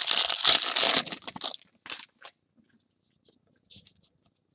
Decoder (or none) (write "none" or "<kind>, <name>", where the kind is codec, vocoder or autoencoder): none